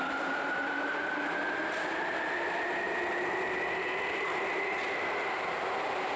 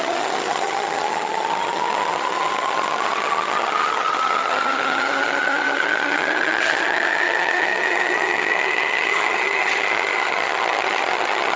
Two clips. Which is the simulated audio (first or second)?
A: second